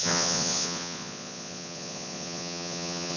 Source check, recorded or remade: remade